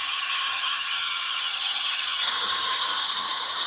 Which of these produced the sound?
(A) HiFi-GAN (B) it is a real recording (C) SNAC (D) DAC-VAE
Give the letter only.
A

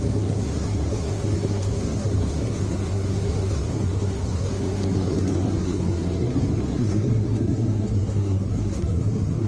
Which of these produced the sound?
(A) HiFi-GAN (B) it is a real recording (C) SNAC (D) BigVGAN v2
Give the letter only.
C